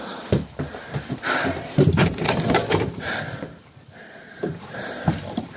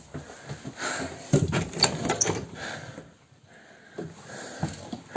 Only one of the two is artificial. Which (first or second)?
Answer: first